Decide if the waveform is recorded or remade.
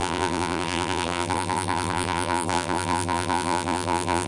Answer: remade